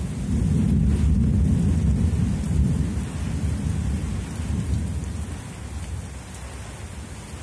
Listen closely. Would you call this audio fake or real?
real